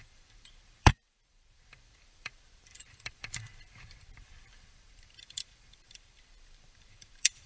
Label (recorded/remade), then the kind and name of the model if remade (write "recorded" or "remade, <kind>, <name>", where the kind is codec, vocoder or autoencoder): remade, vocoder, BigVGAN v2